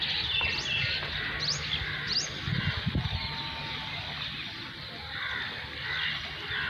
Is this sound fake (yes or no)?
no